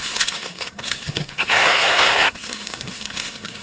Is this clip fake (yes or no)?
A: yes